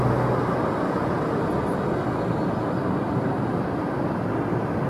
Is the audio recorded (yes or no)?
yes